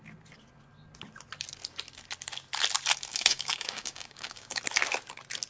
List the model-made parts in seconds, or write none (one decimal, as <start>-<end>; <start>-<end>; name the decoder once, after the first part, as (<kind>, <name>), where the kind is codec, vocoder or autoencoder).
3.1-4.6 (codec, DAC)